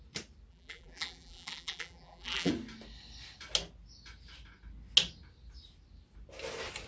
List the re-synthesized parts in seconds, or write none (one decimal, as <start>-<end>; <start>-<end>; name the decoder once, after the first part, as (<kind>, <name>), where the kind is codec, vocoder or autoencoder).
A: 0.5-2.5 (vocoder, BigVGAN v2)